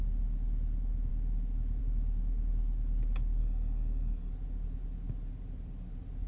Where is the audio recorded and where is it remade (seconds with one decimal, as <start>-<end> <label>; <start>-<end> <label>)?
0.0-3.4 recorded; 3.4-4.3 remade; 4.3-6.3 recorded